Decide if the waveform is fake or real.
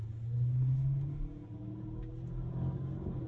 real